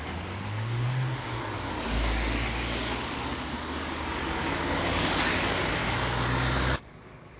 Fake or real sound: fake